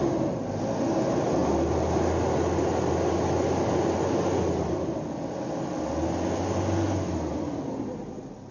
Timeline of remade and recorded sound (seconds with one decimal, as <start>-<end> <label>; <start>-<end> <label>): 0.0-8.5 recorded